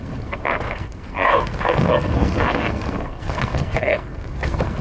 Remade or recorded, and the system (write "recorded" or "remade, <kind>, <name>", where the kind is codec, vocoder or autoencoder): remade, codec, SNAC